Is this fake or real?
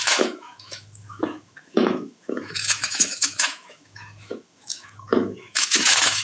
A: fake